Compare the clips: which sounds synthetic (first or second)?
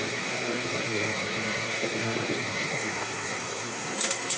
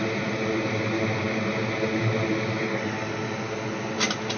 first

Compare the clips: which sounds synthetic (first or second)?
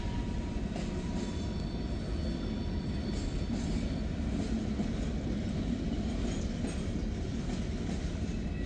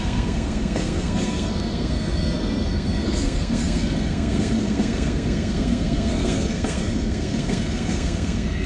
second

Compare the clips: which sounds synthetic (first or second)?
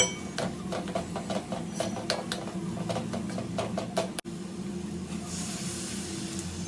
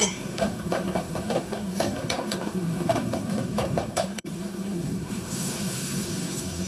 second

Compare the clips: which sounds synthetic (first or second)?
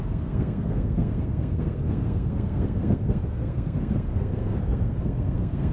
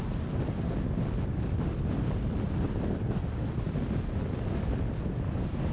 first